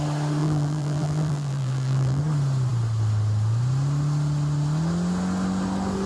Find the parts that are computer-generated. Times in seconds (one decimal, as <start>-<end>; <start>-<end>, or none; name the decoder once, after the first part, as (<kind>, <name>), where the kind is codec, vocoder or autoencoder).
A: 0.4-2.2 (vocoder, BigVGAN v2)